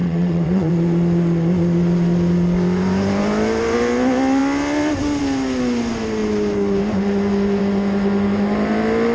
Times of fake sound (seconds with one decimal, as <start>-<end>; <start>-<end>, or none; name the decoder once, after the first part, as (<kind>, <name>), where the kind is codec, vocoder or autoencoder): 0.0-0.7 (vocoder, WaveNeXt)